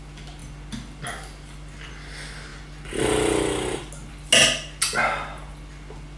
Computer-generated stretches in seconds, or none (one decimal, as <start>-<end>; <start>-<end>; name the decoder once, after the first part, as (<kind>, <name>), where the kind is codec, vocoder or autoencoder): none